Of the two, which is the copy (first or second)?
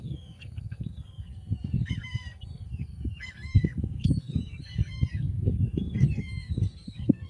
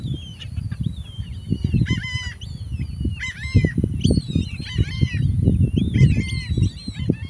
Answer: first